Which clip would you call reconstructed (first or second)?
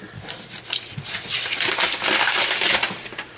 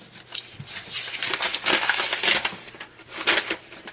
first